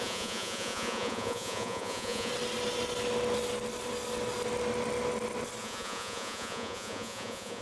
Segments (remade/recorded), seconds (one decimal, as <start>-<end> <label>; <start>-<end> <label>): 0.0-2.3 remade; 2.3-5.6 recorded; 5.6-7.6 remade